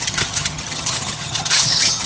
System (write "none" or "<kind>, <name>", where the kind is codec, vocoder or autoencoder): vocoder, HiFi-GAN